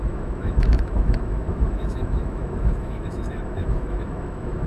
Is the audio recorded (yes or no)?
no